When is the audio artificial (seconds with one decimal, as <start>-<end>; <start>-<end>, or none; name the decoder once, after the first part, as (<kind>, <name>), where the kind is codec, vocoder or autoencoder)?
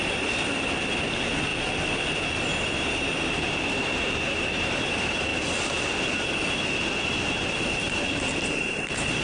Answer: 0.0-1.5 (vocoder, BigVGAN v2); 2.7-5.3; 7.5-9.2